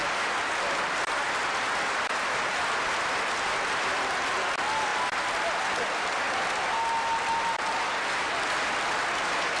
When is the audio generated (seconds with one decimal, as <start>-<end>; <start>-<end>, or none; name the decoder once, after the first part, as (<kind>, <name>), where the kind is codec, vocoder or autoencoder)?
none